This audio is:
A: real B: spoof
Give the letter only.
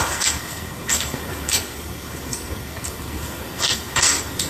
B